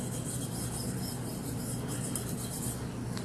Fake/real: real